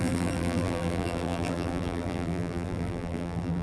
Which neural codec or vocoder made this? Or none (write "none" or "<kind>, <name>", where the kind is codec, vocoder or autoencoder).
vocoder, BigVGAN v2